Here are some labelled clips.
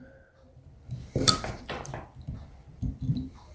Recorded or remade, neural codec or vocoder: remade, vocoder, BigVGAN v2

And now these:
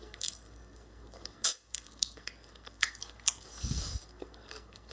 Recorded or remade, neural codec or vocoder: remade, codec, SNAC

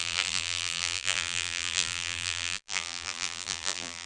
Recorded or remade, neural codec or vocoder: remade, vocoder, BigVGAN v2